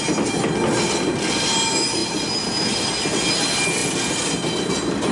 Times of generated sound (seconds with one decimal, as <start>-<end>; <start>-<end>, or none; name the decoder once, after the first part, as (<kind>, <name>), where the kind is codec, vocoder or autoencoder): none